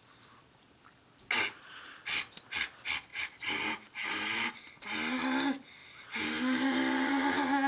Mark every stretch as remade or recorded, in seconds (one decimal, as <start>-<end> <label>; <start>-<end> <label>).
0.0-3.1 recorded; 3.1-4.6 remade; 4.6-5.8 recorded; 5.8-7.1 remade; 7.1-7.7 recorded